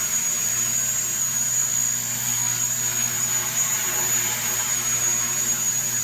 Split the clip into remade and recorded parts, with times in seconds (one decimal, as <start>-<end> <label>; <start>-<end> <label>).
0.0-1.6 remade; 1.6-3.1 recorded; 3.1-6.0 remade